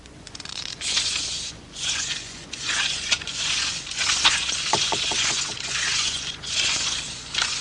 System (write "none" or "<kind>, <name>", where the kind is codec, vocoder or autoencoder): vocoder, Vocos